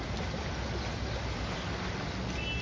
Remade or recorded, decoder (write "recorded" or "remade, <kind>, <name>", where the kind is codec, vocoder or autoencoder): recorded